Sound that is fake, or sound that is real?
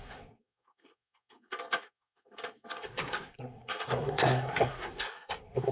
fake